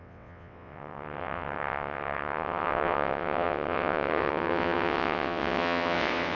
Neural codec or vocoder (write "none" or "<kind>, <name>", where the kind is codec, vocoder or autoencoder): vocoder, WaveNeXt